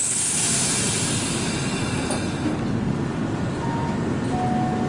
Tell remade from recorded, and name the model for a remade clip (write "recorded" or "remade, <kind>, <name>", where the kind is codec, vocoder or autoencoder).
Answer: recorded